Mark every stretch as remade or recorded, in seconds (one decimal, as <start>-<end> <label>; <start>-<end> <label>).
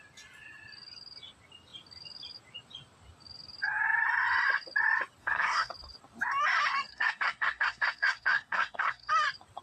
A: 0.0-5.2 recorded; 5.2-5.7 remade; 5.7-6.9 recorded; 6.9-9.1 remade; 9.1-9.6 recorded